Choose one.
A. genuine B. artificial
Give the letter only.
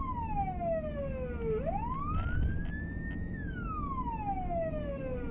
A